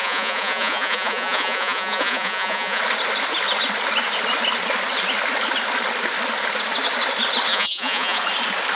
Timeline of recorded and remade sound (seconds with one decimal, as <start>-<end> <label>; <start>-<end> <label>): 0.0-2.8 remade; 2.8-7.5 recorded; 7.5-8.2 remade; 8.2-8.8 recorded